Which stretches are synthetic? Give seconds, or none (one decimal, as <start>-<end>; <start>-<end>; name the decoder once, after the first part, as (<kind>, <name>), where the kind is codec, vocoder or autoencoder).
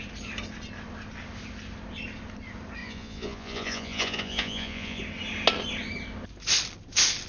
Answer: 2.8-5.0 (vocoder, Vocos)